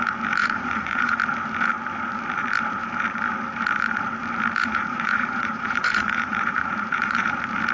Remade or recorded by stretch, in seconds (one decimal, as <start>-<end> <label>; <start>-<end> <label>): 0.0-0.4 recorded; 0.4-1.2 remade; 1.2-4.6 recorded; 4.6-7.3 remade; 7.3-7.7 recorded